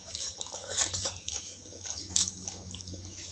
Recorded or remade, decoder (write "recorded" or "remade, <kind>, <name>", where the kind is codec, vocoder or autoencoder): remade, codec, DAC